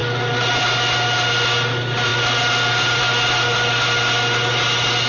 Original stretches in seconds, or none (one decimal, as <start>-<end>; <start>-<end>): 0.0-2.1; 3.0-5.1